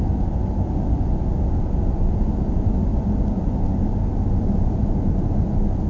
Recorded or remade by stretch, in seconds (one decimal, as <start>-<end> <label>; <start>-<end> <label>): 0.0-5.9 recorded